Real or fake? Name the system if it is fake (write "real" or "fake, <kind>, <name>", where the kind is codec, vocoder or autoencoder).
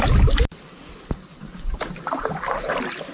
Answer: real